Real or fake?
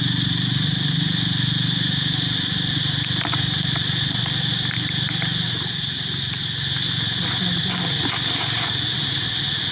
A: real